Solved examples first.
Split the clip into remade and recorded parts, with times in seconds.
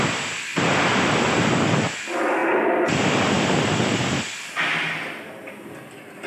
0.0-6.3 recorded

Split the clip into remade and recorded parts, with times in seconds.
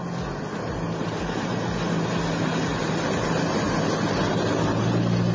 0.0-5.3 recorded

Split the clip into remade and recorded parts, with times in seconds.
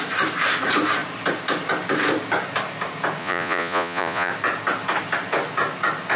0.0-3.2 recorded; 3.2-4.3 remade; 4.3-6.2 recorded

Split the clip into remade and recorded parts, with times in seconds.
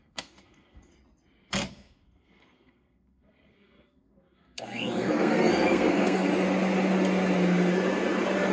0.0-0.9 remade; 0.9-1.7 recorded; 1.7-6.3 remade; 6.3-8.5 recorded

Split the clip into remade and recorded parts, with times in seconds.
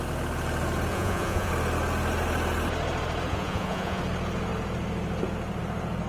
0.0-0.9 recorded; 0.9-1.5 remade; 1.5-3.3 recorded; 3.3-4.0 remade; 4.0-6.1 recorded